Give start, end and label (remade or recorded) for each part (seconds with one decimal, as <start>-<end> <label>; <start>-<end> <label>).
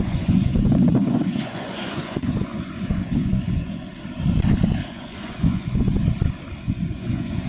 0.0-3.9 remade; 3.9-4.9 recorded; 4.9-6.0 remade; 6.0-6.6 recorded; 6.6-7.5 remade